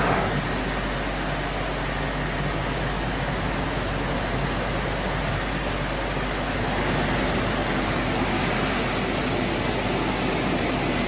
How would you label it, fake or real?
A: real